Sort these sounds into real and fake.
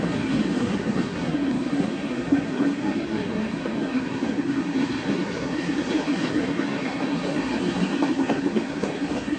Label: fake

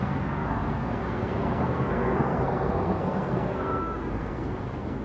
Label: fake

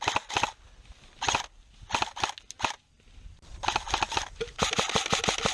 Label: real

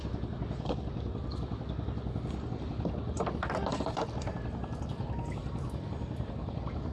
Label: real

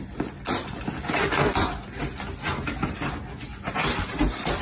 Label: real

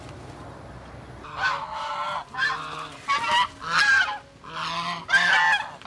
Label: real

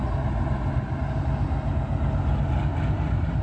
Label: real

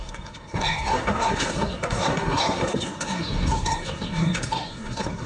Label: fake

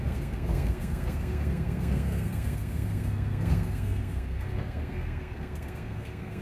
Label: fake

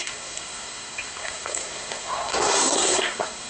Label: fake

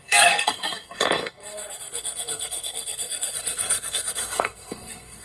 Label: fake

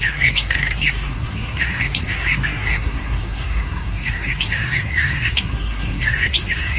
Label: fake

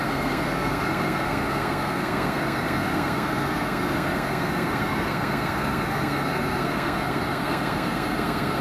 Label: fake